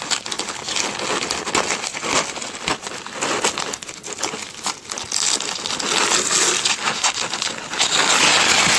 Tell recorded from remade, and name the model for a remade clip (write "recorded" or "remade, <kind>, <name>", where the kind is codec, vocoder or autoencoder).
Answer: recorded